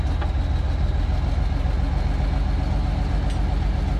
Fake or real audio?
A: real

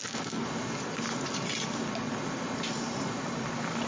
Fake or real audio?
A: real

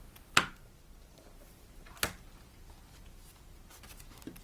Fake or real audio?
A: real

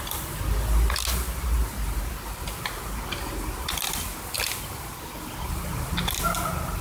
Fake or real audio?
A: real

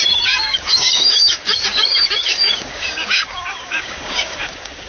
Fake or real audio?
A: fake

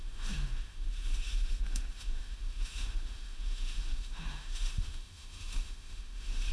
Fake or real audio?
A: fake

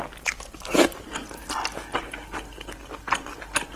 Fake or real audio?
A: real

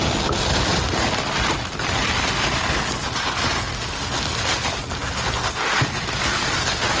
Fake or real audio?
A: real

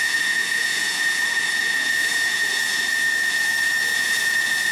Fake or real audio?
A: fake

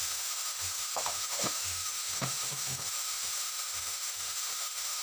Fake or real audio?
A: fake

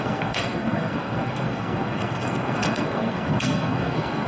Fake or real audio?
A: fake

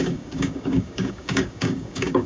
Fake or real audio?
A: fake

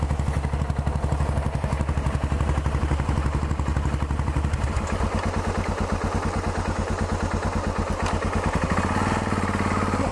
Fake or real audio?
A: real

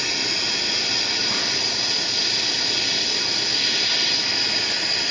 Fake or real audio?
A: real